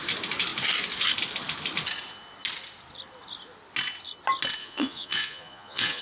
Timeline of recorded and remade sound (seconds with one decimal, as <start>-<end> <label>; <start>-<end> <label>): 0.0-4.6 recorded; 4.6-6.0 remade